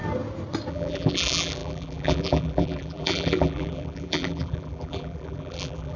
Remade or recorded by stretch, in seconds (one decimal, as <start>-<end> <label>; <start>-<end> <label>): 0.0-0.7 recorded; 0.7-6.0 remade